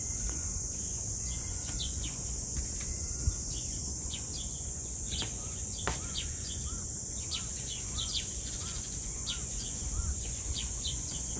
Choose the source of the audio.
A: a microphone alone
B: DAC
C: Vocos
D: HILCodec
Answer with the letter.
C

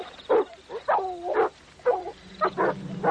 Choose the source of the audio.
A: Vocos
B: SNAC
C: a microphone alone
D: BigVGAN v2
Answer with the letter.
C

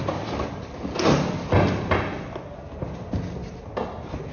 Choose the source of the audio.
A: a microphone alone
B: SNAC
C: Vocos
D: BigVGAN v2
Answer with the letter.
A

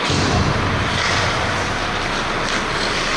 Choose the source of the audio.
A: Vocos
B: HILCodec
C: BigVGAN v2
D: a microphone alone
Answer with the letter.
D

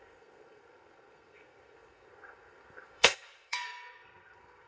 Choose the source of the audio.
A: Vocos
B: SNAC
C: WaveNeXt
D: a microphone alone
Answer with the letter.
B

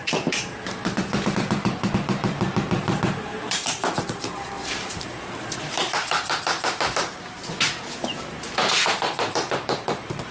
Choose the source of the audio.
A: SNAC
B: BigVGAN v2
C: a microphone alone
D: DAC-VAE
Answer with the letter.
B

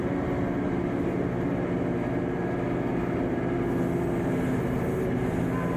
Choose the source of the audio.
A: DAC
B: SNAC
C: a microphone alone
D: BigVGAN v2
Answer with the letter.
C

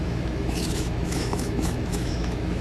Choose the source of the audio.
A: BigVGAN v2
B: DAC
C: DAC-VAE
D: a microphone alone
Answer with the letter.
C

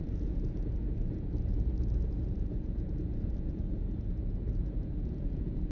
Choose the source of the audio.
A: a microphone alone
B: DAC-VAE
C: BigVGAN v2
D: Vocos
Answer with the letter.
D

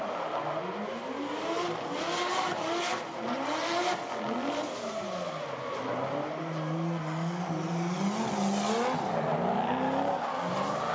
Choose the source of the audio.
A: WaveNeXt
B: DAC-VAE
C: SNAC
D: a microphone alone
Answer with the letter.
D